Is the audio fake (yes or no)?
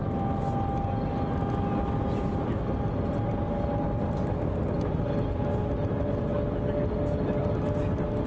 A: no